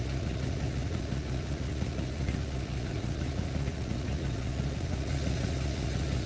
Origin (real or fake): fake